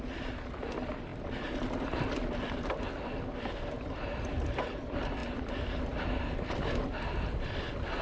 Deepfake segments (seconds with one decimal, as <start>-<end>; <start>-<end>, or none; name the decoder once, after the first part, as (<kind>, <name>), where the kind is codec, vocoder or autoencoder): none